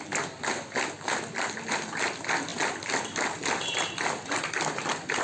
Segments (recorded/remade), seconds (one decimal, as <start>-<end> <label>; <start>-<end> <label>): 0.0-5.2 recorded